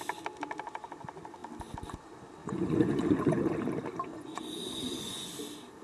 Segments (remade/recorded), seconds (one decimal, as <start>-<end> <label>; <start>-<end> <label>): 0.0-2.4 recorded; 2.4-3.5 remade; 3.5-4.1 recorded; 4.1-5.3 remade; 5.3-5.8 recorded